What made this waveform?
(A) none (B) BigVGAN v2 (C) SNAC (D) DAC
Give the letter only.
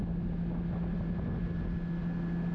A